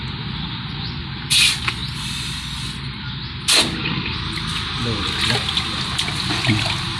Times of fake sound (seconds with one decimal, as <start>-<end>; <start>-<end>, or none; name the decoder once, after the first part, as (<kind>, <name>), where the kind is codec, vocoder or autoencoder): 0.0-1.0 (vocoder, BigVGAN v2)